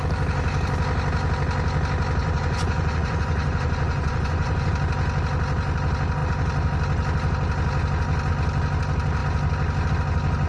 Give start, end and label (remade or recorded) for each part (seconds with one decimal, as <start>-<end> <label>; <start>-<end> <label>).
0.0-2.2 recorded; 2.2-4.7 remade; 4.7-10.5 recorded